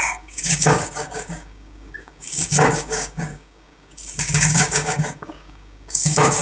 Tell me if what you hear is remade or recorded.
remade